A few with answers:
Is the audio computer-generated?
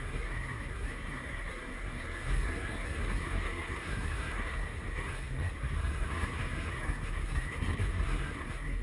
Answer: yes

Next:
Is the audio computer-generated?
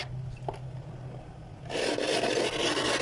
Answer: no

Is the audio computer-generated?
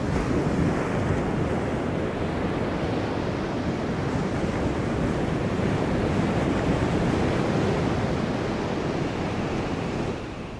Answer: no